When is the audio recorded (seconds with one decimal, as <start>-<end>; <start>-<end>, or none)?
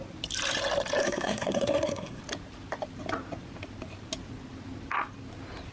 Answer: 0.0-1.0; 2.2-5.7